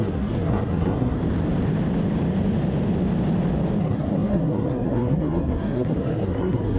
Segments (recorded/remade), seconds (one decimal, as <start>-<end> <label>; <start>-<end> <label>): 0.0-1.2 remade; 1.2-3.8 recorded; 3.8-6.8 remade

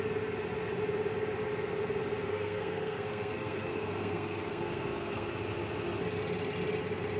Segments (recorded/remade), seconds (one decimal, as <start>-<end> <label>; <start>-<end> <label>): 0.0-2.3 recorded; 2.3-5.3 remade; 5.3-7.2 recorded

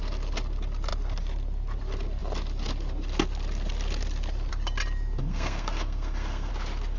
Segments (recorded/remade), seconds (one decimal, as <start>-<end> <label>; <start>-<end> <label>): 0.0-5.2 recorded; 5.2-6.5 remade; 6.5-7.0 recorded